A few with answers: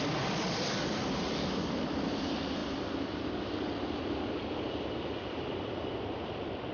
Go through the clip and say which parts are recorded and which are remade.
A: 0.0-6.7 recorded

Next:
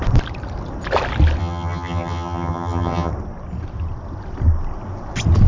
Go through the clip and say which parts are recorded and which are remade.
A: 0.0-1.4 recorded; 1.4-3.1 remade; 3.1-5.5 recorded

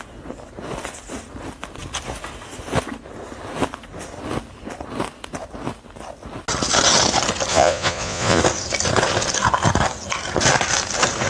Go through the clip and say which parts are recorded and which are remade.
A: 0.0-7.5 recorded; 7.5-8.4 remade; 8.4-11.3 recorded